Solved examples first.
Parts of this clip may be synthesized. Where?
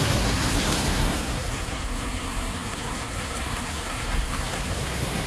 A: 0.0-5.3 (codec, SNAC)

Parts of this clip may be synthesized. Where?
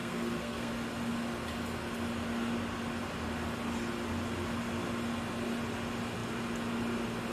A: 0.0-0.7 (codec, SNAC)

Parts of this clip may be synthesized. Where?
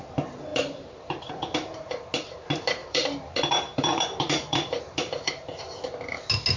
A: 0.5-1.3 (vocoder, BigVGAN v2); 2.8-5.6